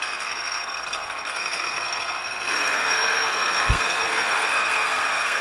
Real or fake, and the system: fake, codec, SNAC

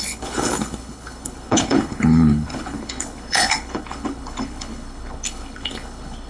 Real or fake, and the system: fake, codec, HILCodec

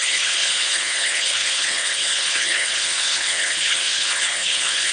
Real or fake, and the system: fake, codec, HILCodec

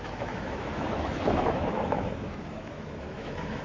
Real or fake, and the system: fake, autoencoder, DAC-VAE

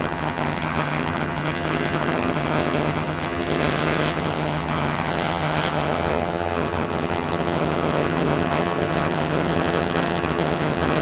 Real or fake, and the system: fake, vocoder, HiFi-GAN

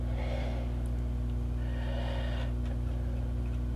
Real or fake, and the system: real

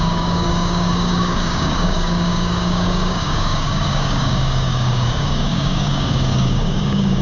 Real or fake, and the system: fake, codec, DAC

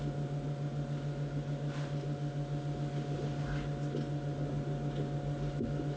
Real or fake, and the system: real